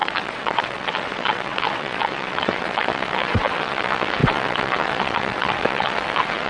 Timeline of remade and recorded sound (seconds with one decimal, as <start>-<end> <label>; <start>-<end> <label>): 0.0-6.5 remade